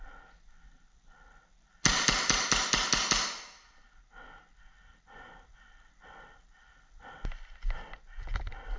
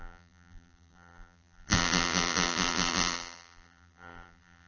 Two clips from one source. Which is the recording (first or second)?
first